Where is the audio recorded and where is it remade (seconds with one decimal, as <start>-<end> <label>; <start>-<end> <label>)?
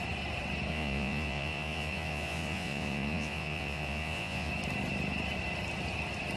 0.0-0.7 recorded; 0.7-4.5 remade; 4.5-6.4 recorded